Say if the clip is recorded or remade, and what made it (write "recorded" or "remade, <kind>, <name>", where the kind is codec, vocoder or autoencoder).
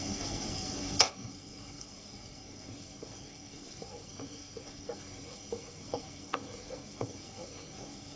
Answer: remade, codec, SNAC